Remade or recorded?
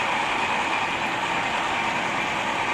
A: recorded